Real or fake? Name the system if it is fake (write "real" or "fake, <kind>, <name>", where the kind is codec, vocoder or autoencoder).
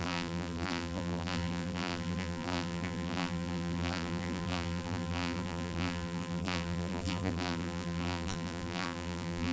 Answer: fake, vocoder, BigVGAN v2